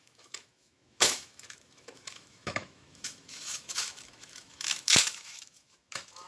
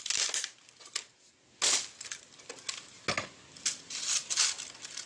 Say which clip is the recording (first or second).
second